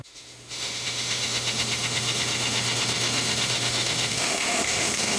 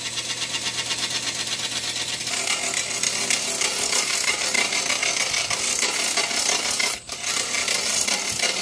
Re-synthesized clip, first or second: first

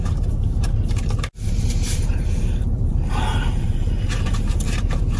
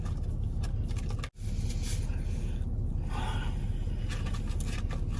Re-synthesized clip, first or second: first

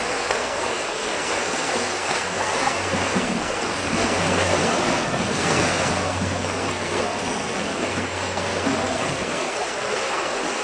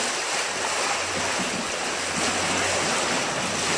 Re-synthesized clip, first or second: first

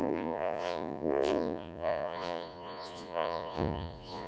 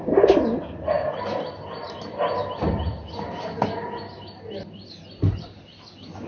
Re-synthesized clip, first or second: first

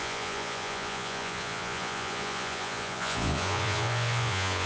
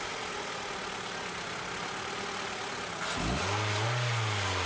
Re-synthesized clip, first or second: first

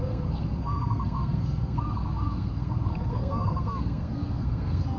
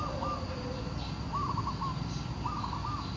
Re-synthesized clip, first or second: first